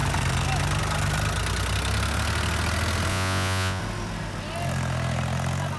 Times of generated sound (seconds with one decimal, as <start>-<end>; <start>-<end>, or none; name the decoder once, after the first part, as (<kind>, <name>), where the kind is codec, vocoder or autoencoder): 3.1-3.8 (vocoder, Vocos)